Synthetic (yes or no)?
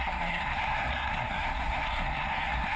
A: yes